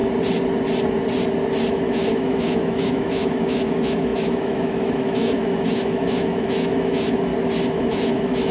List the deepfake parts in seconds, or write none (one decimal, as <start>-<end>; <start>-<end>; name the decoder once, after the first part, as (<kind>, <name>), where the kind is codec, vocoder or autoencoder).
1.7-7.3 (autoencoder, DAC-VAE); 7.8-8.5